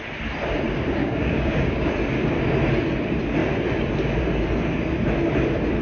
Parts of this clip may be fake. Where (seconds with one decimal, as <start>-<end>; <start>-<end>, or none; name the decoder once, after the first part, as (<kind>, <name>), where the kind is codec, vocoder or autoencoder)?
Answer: 1.0-1.9 (codec, DAC)